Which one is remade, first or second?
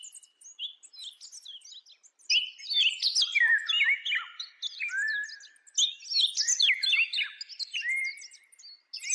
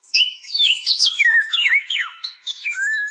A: second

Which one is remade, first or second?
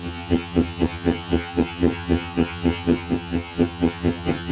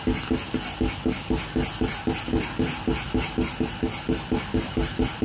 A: first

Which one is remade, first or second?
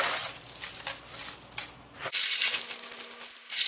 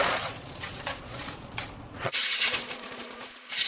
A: second